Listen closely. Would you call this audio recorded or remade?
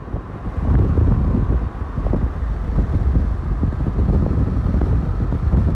recorded